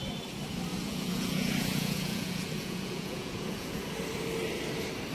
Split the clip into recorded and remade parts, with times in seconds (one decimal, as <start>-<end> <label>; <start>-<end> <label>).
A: 0.0-0.7 recorded; 0.7-3.8 remade; 3.8-5.1 recorded